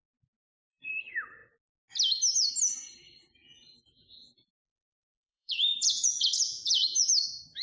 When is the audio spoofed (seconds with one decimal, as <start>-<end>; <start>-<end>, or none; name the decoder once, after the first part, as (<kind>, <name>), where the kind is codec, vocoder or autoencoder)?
0.4-0.9 (vocoder, Vocos); 3.4-7.1